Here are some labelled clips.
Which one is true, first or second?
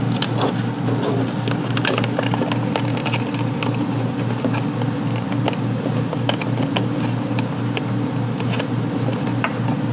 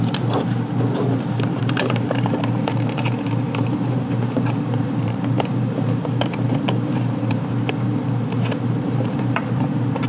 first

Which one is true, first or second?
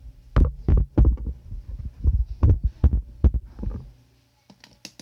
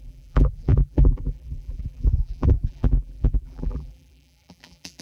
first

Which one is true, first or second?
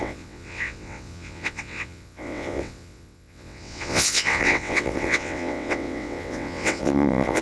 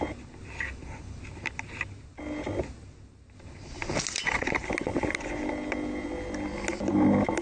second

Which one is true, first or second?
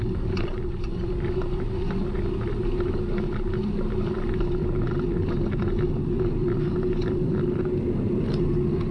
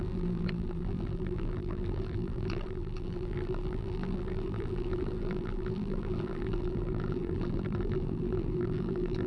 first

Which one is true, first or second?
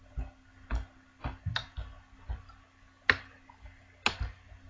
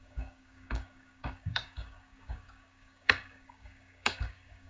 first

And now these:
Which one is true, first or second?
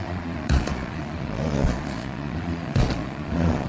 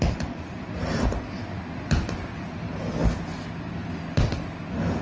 second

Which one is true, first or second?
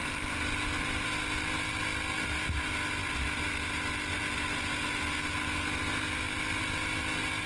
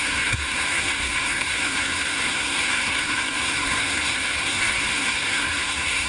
first